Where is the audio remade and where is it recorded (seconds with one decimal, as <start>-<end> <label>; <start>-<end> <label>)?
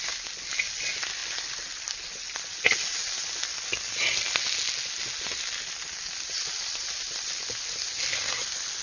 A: 0.0-8.8 recorded